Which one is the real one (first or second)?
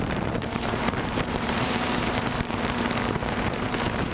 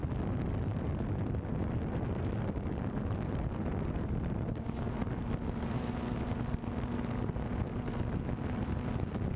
second